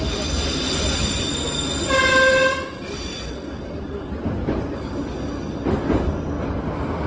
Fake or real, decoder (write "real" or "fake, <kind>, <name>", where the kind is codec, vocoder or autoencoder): real